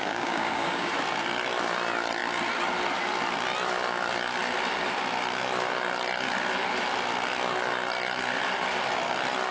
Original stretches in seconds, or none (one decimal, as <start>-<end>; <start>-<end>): 0.9-9.5